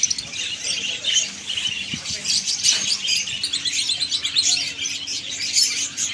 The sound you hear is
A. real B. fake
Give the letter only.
A